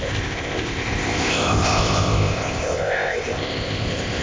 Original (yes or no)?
no